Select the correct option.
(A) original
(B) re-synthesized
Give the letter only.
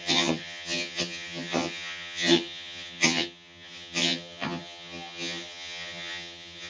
B